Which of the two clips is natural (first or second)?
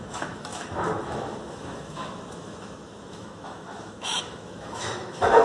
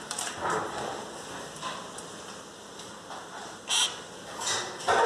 second